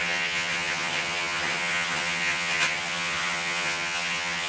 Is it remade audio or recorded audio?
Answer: remade